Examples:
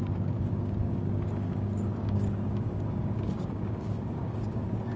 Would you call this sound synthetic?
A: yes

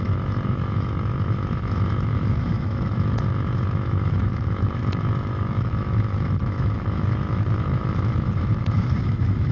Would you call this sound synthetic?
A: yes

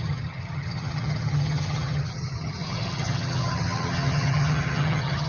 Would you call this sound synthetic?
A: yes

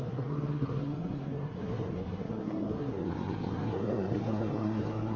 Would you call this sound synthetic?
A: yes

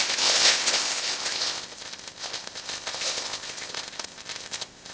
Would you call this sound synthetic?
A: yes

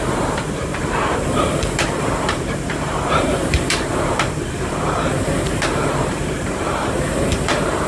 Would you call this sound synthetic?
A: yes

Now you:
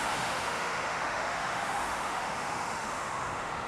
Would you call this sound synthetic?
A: yes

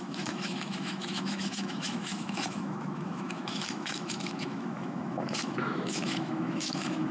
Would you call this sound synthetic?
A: yes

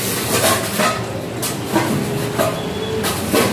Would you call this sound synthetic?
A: no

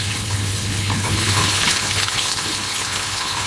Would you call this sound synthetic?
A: yes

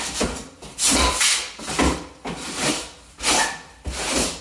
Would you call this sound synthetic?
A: no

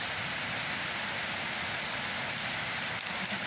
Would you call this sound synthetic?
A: no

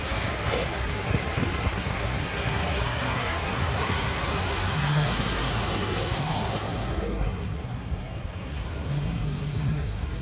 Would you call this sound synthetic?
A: yes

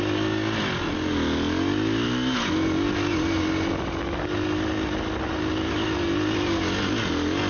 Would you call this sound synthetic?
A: no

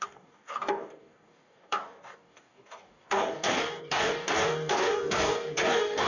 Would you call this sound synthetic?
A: yes